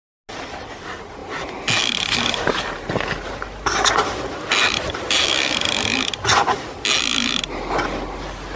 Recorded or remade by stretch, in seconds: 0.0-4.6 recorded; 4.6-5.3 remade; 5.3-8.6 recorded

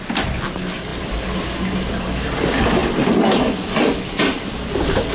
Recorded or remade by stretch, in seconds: 0.0-5.1 recorded

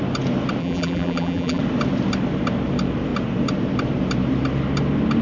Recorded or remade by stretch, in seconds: 0.0-0.6 recorded; 0.6-1.6 remade; 1.6-5.2 recorded

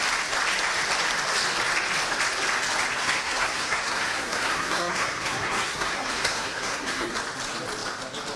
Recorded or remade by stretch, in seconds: 0.0-3.0 recorded; 3.0-7.2 remade; 7.2-8.4 recorded

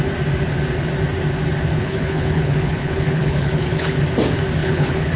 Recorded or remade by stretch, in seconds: 0.0-1.7 recorded; 1.7-4.0 remade; 4.0-4.6 recorded; 4.6-5.2 remade

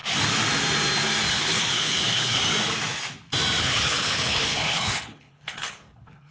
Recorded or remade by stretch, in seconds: 0.0-1.3 recorded; 1.3-2.4 remade; 2.4-3.6 recorded; 3.6-6.3 remade

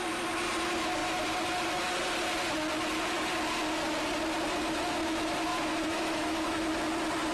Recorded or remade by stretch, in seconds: 0.0-5.5 recorded; 5.5-6.7 remade; 6.7-7.3 recorded

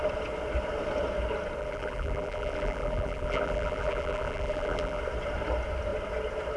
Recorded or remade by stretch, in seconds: 0.0-1.6 recorded; 1.6-5.0 remade; 5.0-6.6 recorded